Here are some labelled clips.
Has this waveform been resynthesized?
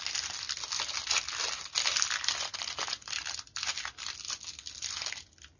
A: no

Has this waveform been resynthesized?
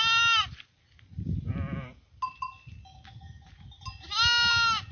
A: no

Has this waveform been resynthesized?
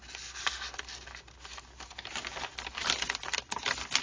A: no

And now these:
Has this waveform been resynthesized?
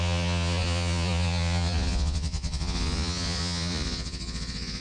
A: yes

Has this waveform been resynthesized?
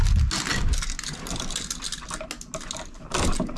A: no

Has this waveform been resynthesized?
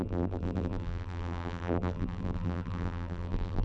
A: yes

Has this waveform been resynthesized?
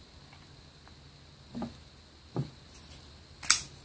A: no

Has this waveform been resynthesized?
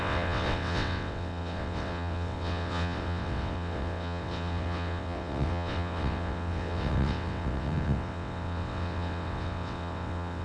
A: yes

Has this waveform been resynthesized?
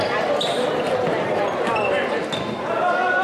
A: yes